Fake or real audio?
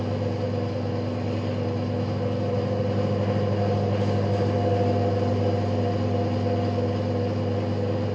real